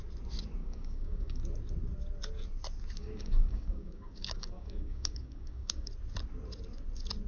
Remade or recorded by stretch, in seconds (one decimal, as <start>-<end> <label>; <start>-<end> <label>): 0.0-0.6 recorded; 0.6-1.4 remade; 1.4-3.0 recorded; 3.0-5.9 remade; 5.9-7.3 recorded